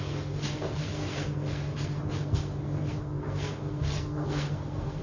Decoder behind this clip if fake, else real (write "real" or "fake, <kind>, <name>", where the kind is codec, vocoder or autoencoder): fake, codec, SNAC